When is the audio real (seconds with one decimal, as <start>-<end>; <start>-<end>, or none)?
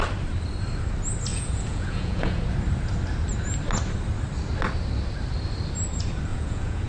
0.0-1.3; 2.4-6.3